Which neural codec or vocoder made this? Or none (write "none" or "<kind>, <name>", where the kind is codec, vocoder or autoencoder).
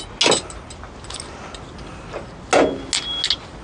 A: none